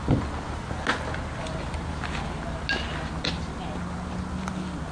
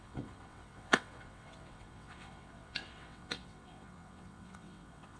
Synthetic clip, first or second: second